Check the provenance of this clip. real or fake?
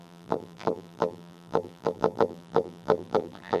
fake